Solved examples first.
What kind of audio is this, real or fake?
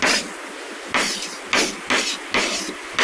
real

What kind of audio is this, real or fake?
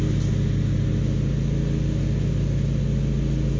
real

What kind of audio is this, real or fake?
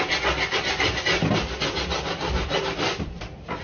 real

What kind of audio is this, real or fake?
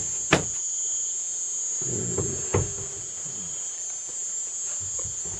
real